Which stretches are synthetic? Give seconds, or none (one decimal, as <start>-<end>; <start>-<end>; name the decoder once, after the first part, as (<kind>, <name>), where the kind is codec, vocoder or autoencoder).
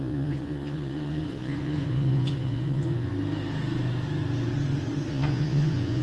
0.0-3.1 (vocoder, Vocos); 5.1-6.0